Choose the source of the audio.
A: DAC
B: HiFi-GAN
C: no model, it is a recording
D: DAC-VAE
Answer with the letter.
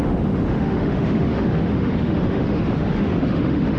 D